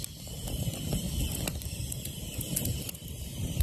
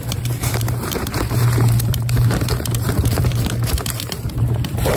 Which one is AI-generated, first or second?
second